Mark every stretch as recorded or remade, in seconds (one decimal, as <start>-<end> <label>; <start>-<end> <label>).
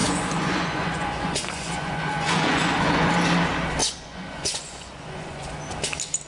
0.0-3.1 remade; 3.1-3.8 recorded; 3.8-5.5 remade; 5.5-6.3 recorded